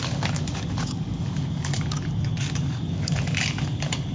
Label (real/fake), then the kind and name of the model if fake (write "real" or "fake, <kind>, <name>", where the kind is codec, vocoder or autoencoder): fake, codec, DAC